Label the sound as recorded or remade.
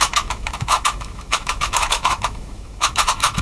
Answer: remade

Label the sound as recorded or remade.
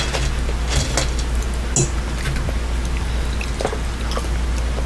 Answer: recorded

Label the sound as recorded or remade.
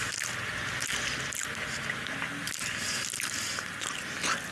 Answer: recorded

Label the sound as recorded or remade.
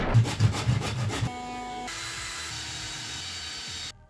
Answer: recorded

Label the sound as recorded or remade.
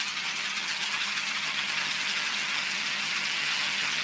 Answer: remade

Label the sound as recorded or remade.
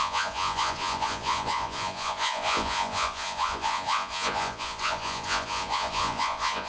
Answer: remade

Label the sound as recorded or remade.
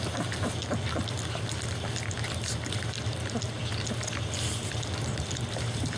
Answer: recorded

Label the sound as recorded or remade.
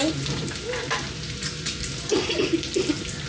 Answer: recorded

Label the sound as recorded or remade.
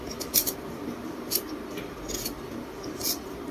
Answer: remade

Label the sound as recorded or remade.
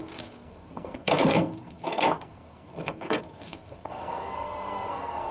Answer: remade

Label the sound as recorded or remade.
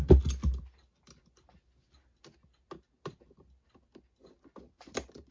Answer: recorded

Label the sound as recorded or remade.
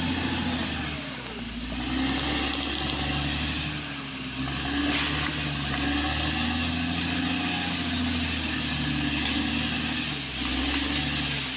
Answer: recorded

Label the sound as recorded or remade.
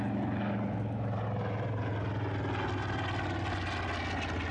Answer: recorded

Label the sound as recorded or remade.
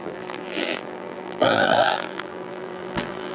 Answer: remade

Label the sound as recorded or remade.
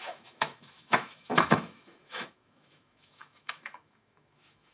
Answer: remade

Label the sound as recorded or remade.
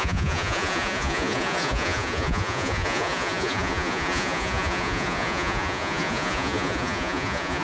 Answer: remade